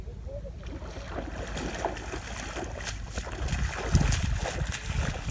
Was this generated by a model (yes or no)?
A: no